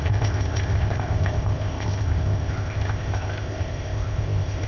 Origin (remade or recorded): remade